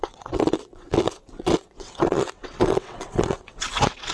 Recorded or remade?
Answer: remade